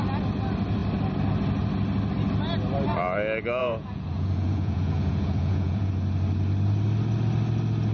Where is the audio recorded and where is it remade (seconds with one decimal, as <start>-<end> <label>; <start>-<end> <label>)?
0.0-3.6 recorded; 3.6-5.9 remade; 5.9-7.9 recorded